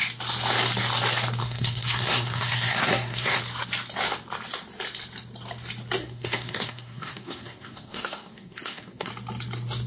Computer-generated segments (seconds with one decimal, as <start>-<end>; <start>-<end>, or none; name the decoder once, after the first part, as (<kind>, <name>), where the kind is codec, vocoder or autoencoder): 1.4-3.4 (codec, SNAC); 6.0-9.1